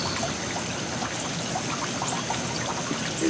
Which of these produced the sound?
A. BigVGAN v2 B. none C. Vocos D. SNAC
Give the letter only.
B